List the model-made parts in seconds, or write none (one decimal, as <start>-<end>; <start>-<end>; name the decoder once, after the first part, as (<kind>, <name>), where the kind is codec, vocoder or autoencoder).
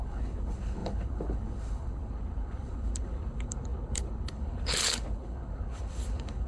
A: 0.0-6.5 (codec, HILCodec)